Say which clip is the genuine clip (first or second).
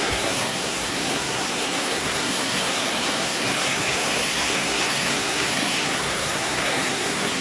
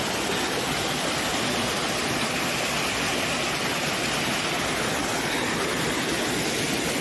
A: second